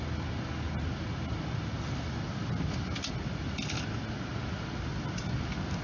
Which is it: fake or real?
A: real